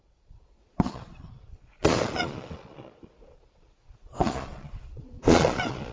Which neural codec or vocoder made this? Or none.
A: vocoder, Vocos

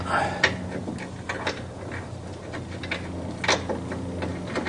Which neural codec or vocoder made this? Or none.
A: none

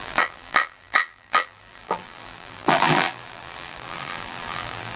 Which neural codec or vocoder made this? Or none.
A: vocoder, BigVGAN v2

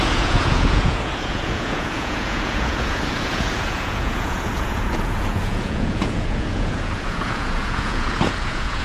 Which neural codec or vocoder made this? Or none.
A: vocoder, Vocos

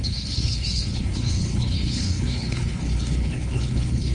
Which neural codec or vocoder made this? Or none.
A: codec, HILCodec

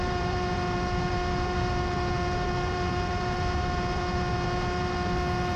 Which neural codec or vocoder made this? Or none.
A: vocoder, BigVGAN v2